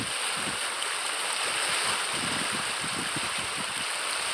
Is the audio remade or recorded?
recorded